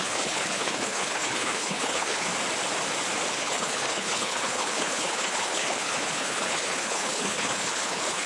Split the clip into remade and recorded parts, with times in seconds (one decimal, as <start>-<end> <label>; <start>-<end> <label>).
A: 0.0-2.3 remade; 2.3-3.3 recorded; 3.3-8.3 remade